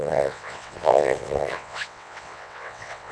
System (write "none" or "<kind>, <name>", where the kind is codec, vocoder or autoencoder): vocoder, WaveNeXt